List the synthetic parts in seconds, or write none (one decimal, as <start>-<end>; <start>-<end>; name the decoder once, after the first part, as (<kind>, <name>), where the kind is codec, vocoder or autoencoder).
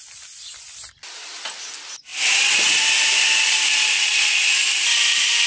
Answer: none